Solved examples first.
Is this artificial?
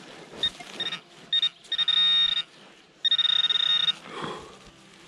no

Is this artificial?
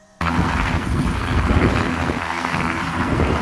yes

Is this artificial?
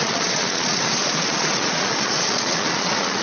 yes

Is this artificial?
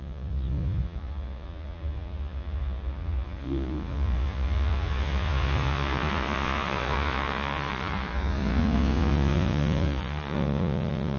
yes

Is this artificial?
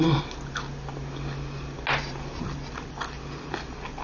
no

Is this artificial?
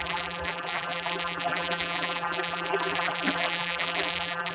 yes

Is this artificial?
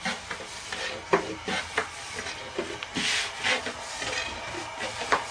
no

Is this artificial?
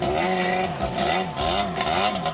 no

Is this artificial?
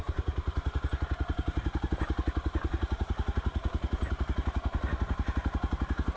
no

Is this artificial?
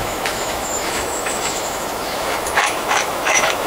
yes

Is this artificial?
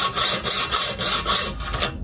no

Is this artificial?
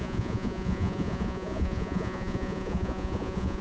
yes